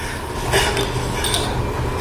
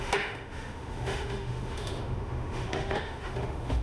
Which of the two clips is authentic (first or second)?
first